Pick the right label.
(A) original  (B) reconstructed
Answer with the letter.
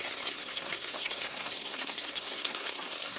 B